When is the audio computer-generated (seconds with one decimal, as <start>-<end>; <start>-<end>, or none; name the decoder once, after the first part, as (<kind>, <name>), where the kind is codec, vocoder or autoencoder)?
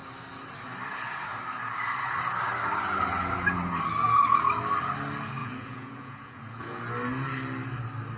5.4-6.8 (vocoder, Vocos)